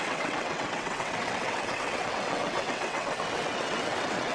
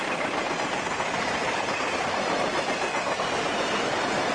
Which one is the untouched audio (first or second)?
second